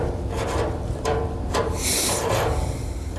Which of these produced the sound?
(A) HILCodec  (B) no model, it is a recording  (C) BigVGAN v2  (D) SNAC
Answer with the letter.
C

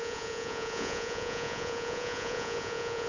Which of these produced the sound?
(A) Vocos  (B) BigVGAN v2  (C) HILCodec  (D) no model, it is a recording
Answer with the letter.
A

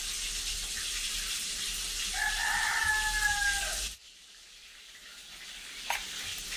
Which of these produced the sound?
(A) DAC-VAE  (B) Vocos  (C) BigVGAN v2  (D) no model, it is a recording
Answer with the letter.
D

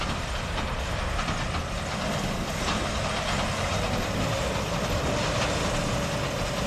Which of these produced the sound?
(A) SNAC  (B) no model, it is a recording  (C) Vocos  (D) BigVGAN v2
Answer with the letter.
B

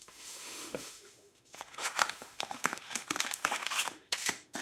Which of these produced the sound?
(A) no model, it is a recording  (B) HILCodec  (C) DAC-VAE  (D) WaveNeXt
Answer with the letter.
C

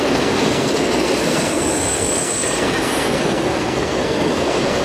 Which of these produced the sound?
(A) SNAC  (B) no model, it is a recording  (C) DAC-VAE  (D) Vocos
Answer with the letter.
A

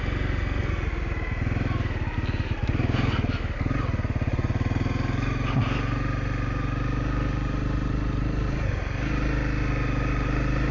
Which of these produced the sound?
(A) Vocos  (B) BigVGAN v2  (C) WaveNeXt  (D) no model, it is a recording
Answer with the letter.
D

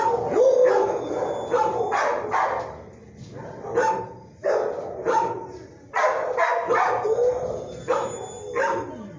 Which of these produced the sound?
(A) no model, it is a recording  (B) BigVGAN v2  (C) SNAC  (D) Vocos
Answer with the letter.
A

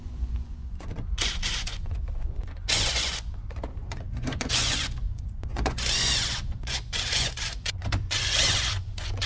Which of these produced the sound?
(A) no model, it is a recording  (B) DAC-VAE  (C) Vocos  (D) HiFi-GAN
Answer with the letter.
C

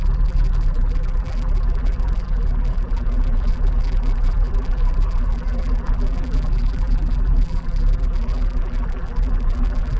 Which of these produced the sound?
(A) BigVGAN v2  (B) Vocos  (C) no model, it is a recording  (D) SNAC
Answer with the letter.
A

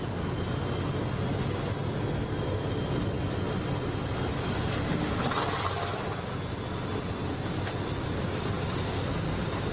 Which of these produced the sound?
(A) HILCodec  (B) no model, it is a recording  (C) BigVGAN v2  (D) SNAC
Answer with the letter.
B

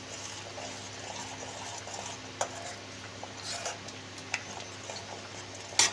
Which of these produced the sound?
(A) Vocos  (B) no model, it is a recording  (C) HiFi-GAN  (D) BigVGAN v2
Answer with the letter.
B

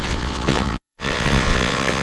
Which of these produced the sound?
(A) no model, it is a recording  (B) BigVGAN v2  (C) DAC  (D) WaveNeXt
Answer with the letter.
D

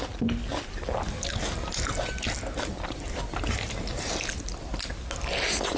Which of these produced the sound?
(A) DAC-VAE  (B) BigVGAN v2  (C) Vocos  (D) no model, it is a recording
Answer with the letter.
D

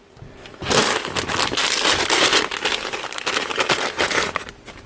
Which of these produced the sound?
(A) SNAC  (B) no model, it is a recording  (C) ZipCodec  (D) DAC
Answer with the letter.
B